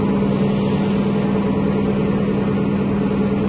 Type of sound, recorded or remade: recorded